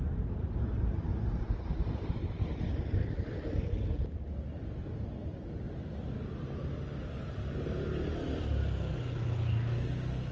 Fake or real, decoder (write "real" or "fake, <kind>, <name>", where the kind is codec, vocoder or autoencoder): real